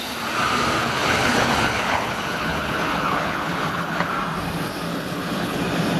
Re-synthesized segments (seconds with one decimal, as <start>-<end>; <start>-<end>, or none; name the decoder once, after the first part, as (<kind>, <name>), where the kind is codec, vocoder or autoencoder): 0.8-4.1 (codec, HILCodec); 4.9-5.6